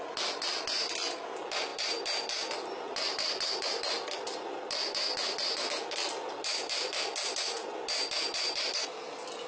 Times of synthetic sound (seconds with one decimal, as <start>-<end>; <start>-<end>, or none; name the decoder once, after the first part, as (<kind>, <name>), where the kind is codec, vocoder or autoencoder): none